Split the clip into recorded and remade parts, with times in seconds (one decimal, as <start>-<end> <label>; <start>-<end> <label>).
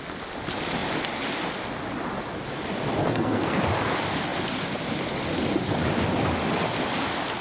0.0-3.0 recorded; 3.0-3.6 remade; 3.6-7.4 recorded